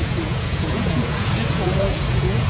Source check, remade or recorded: remade